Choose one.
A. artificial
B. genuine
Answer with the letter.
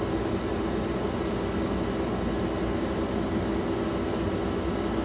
B